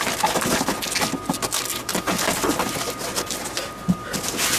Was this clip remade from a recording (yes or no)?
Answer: no